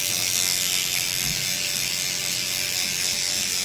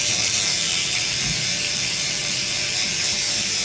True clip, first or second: first